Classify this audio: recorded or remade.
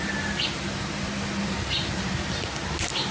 recorded